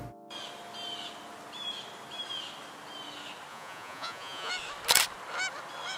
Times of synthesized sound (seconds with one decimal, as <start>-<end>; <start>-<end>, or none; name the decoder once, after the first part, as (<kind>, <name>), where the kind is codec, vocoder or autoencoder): 3.5-4.5 (vocoder, Vocos)